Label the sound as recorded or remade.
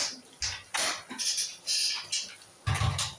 recorded